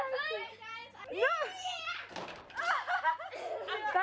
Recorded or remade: recorded